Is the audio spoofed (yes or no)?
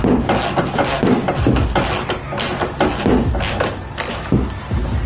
no